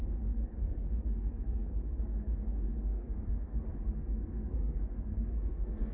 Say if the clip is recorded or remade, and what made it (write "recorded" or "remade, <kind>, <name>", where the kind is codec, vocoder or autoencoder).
remade, codec, SNAC